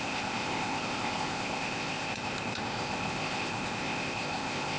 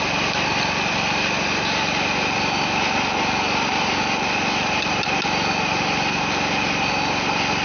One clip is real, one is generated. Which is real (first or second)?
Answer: second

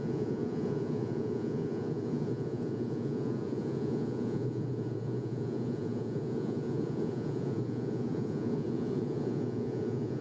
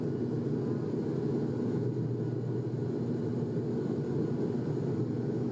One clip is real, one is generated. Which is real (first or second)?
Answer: second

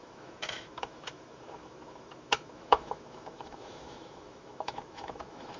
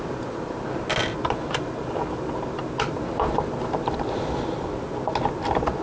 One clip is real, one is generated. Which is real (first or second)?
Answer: second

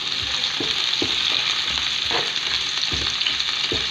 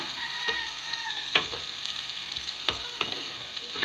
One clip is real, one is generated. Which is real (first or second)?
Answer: first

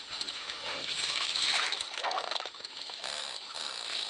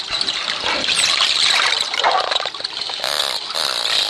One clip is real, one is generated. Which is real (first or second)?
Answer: second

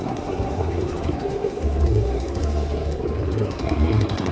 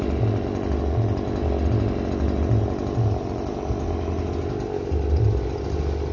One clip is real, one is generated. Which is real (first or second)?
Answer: second